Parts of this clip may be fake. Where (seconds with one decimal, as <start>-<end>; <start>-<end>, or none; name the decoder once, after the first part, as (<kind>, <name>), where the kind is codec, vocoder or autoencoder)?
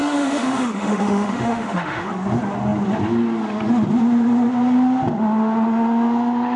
0.0-2.1 (autoencoder, DAC-VAE)